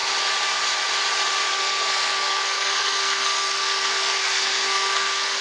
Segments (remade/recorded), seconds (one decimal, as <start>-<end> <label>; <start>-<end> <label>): 0.0-1.5 recorded; 1.5-5.4 remade